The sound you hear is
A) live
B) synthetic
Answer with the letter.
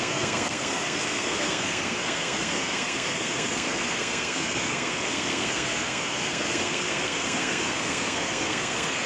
B